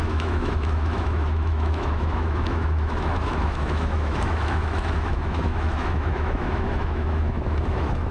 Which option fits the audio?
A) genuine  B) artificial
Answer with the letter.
B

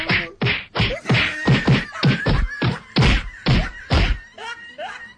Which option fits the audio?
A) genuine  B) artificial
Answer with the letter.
A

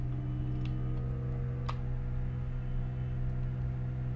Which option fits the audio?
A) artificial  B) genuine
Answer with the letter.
B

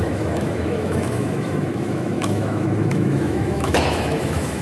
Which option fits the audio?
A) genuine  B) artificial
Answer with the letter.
B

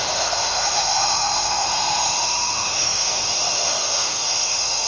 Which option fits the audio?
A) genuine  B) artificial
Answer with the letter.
B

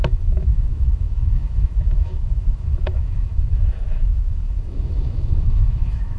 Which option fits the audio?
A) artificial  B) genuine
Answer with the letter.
A